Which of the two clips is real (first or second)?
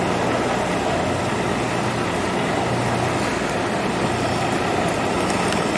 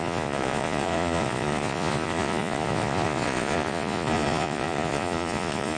first